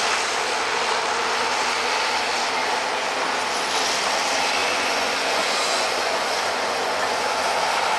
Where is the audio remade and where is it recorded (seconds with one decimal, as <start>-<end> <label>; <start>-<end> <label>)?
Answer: 0.0-4.6 recorded; 4.6-7.5 remade; 7.5-8.0 recorded